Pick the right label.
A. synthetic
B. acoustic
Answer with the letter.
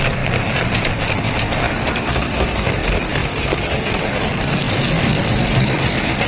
A